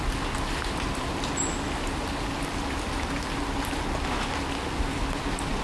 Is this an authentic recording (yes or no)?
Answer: yes